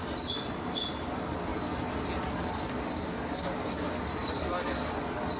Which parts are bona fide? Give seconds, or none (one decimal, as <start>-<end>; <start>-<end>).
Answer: 0.0-5.4